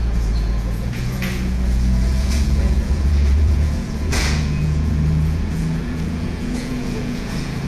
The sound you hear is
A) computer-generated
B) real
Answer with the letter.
A